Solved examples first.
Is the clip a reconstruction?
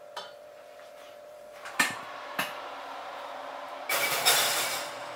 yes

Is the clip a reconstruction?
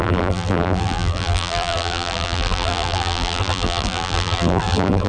yes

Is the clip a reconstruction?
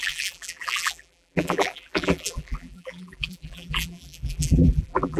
yes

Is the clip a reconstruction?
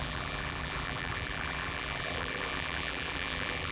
yes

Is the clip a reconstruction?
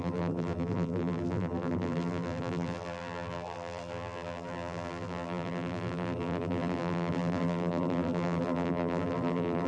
yes